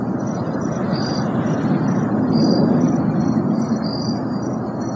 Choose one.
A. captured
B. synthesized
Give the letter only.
A